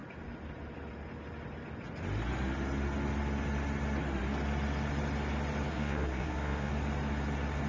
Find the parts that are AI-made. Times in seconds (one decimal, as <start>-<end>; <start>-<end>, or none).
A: 5.7-6.7